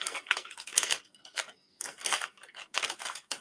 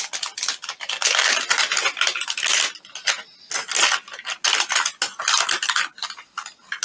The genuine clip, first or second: second